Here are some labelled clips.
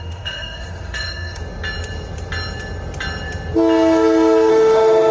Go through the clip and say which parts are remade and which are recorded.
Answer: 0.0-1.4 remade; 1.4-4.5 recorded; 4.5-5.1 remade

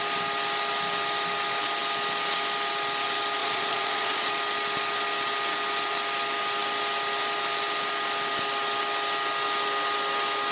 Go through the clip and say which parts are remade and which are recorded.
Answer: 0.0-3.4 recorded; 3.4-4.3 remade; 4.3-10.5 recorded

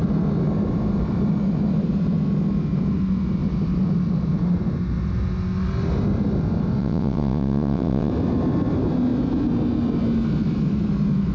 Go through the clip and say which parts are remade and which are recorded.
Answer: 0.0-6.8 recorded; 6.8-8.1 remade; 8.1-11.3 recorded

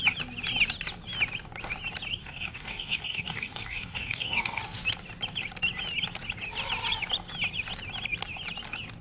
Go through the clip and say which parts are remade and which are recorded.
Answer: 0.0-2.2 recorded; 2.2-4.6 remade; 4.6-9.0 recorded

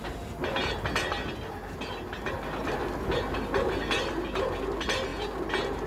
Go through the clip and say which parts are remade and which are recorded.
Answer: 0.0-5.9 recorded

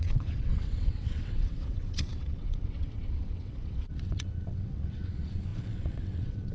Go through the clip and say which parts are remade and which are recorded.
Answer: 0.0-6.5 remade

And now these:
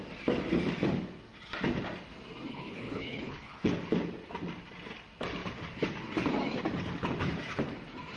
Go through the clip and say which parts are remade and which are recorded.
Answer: 0.0-2.5 recorded; 2.5-3.7 remade; 3.7-8.2 recorded

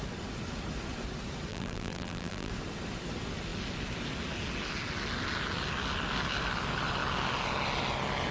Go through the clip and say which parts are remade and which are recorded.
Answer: 0.0-1.5 recorded; 1.5-2.5 remade; 2.5-8.3 recorded